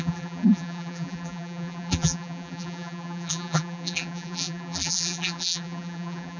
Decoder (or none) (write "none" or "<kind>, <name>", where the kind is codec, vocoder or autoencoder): vocoder, BigVGAN v2